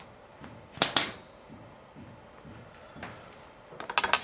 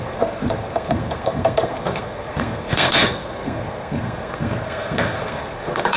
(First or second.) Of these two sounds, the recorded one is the first